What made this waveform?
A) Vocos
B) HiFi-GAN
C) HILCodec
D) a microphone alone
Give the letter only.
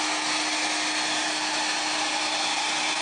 D